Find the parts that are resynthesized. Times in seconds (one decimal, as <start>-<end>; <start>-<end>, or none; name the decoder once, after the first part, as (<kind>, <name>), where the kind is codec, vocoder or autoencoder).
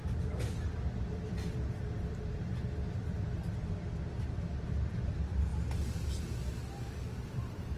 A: 1.0-5.5 (vocoder, BigVGAN v2); 6.5-7.8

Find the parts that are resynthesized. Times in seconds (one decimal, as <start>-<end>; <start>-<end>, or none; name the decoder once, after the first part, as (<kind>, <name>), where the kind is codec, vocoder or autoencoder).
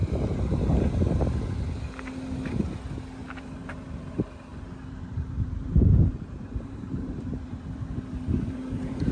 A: 0.0-0.8 (vocoder, BigVGAN v2); 3.2-4.1; 4.5-9.1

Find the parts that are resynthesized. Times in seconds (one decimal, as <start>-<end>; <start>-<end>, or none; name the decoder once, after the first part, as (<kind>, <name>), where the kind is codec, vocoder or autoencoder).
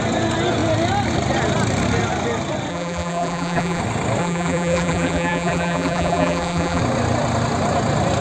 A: 2.7-3.8 (vocoder, BigVGAN v2); 4.2-6.8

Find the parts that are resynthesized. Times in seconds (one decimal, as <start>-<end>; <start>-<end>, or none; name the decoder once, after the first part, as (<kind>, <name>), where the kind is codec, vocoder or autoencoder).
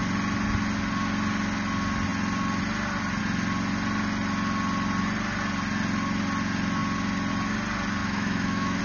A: 8.0-8.8 (autoencoder, DAC-VAE)